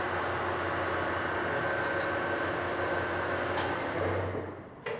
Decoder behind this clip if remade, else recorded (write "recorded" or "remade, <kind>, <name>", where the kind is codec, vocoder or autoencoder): recorded